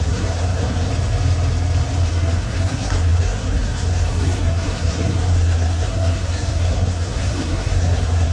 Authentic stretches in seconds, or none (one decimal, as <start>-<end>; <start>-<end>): 0.9-2.1